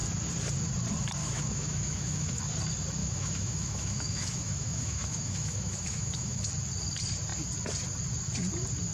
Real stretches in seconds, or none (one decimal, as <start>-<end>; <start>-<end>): 0.0-1.2; 2.4-3.0; 6.5-8.9